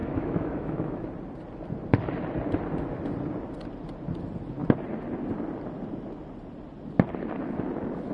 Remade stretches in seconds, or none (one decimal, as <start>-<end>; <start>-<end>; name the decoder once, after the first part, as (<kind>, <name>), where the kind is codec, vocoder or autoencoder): 0.0-1.0 (autoencoder, DAC-VAE)